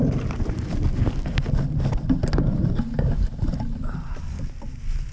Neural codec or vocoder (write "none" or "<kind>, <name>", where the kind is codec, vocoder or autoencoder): none